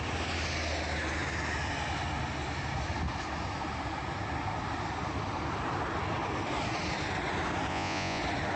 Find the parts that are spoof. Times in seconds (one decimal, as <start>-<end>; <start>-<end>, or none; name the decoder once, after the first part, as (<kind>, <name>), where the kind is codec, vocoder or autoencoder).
7.7-8.2 (vocoder, Vocos)